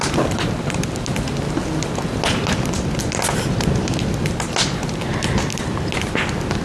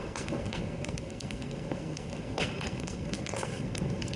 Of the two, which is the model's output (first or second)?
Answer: second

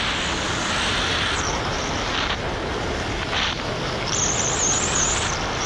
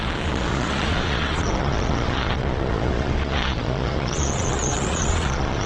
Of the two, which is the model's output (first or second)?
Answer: second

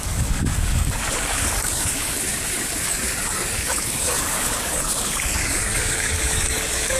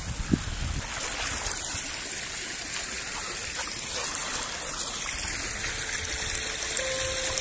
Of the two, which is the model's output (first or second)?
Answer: first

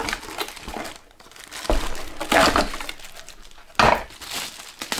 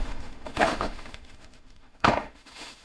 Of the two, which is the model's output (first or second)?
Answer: second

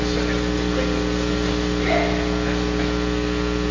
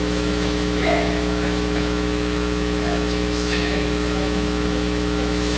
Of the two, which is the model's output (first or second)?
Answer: second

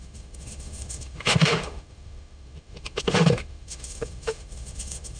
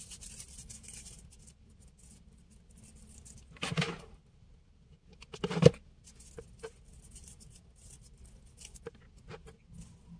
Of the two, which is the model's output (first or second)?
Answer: first